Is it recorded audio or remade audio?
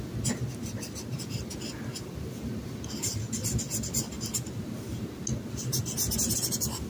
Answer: recorded